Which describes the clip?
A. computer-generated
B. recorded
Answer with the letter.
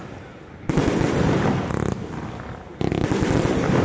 B